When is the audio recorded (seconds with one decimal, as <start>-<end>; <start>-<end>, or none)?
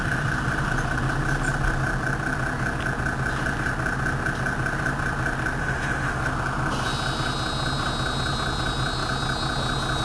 0.0-5.6; 6.2-10.0